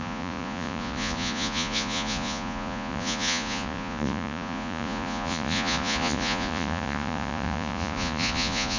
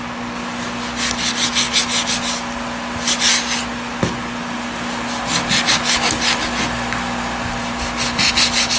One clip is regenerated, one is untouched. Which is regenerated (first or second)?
first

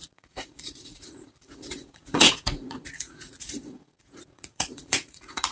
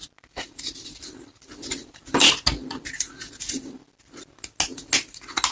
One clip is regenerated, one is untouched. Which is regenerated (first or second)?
first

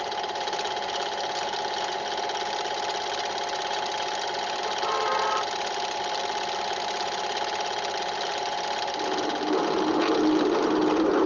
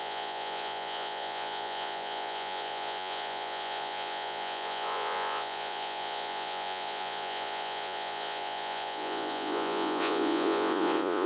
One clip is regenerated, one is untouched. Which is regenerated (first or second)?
second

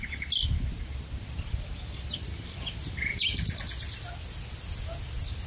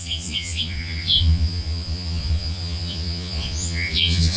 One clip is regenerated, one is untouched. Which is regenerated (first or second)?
second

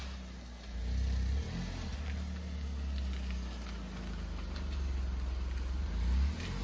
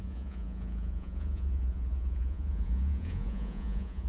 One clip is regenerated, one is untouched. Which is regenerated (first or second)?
second